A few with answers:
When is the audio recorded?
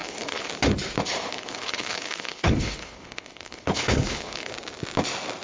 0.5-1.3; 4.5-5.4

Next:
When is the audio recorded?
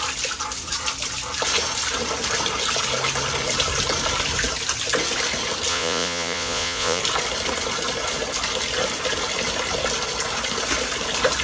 0.0-5.7; 7.0-11.4